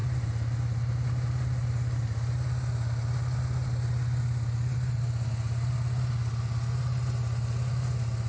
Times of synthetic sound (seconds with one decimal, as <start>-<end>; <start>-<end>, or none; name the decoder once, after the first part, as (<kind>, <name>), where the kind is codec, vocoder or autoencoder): none